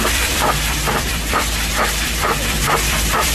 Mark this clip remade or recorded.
remade